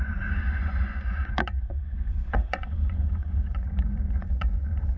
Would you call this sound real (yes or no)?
no